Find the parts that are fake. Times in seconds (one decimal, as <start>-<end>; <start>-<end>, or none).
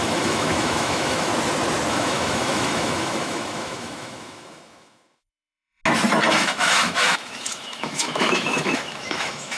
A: 0.0-1.3; 1.9-5.8; 6.3-9.6